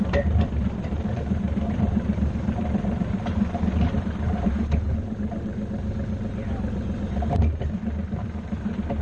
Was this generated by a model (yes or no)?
yes